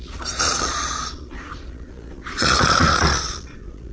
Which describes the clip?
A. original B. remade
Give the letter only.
B